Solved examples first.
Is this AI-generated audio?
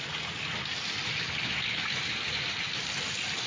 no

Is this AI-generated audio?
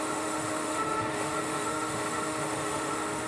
yes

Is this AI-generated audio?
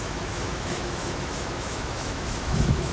yes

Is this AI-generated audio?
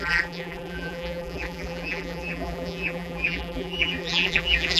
yes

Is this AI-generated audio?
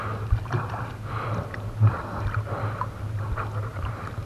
no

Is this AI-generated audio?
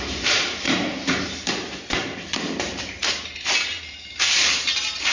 yes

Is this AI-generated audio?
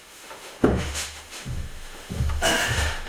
yes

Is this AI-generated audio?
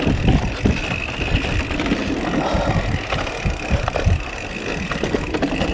no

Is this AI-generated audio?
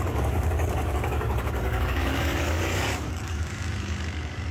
yes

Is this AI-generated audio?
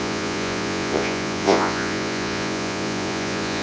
yes